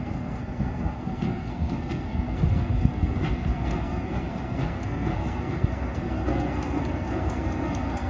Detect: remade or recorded remade